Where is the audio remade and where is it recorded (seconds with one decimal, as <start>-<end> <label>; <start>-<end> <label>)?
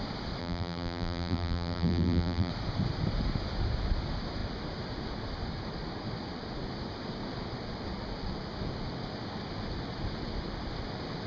0.0-0.4 recorded; 0.4-2.5 remade; 2.5-11.3 recorded